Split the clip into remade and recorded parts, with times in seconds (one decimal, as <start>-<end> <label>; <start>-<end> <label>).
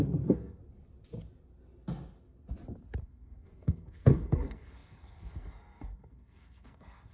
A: 0.0-0.6 remade; 0.6-3.0 recorded; 3.0-7.1 remade